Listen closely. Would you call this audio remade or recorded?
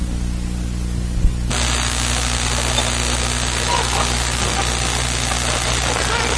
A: recorded